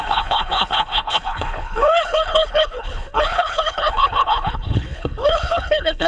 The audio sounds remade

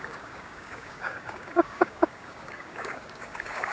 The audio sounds remade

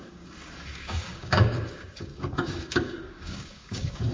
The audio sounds remade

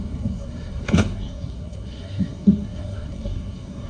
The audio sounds remade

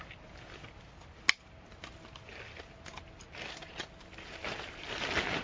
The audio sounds recorded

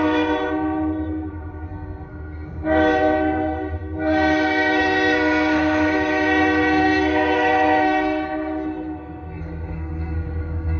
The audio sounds remade